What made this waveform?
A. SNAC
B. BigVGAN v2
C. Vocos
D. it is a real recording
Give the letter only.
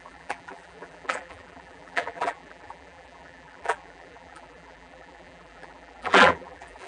B